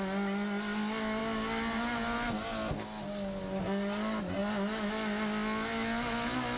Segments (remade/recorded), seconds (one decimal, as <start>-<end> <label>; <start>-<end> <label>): 0.0-6.6 recorded